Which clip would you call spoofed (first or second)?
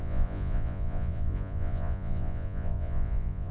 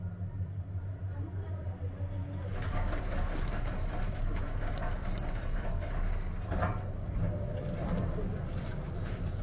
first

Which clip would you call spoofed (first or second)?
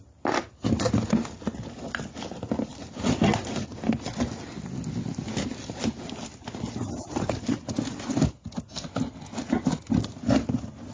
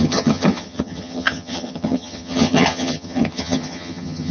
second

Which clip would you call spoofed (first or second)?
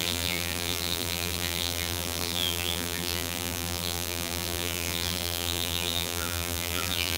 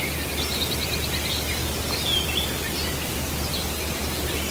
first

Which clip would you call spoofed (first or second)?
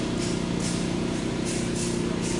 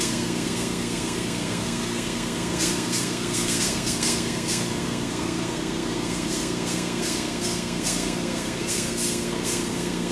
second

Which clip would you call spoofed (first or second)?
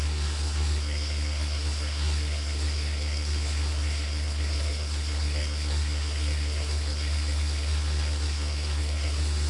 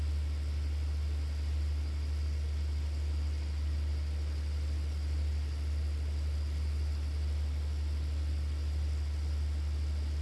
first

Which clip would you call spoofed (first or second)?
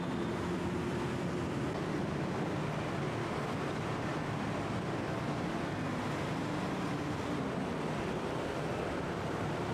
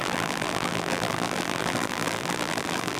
second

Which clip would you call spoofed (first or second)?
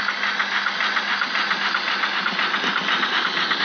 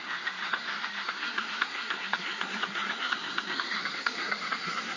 second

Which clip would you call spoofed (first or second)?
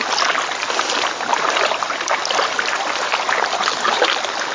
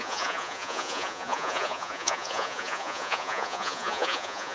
second